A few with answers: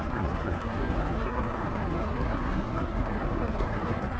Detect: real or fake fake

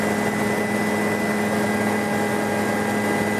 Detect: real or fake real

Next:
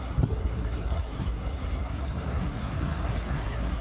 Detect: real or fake fake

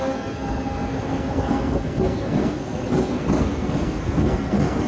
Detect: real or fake fake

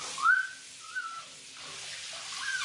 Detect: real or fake real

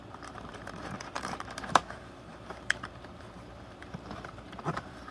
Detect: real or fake fake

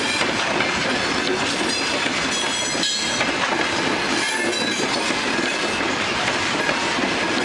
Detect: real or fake real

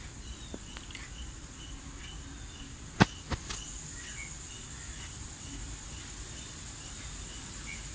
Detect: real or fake real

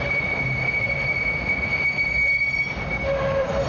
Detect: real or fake fake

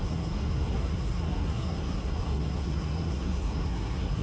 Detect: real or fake fake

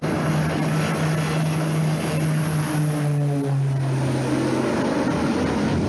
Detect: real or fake real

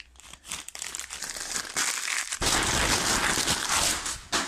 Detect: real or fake real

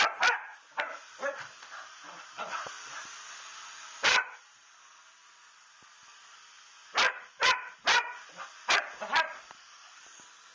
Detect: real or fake fake